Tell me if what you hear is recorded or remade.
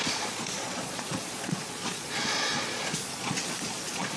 remade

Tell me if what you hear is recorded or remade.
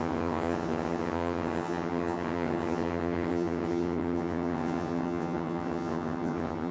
remade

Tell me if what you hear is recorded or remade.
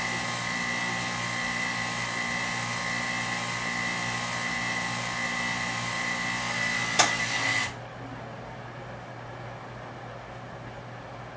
recorded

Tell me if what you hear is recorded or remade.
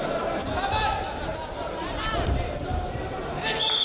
remade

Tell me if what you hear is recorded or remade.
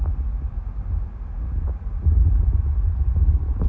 recorded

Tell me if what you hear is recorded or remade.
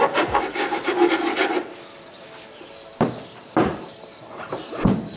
remade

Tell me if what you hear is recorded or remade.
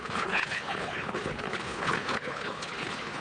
remade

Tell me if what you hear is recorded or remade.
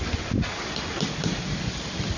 recorded